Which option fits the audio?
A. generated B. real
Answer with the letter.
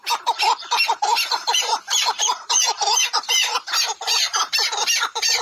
A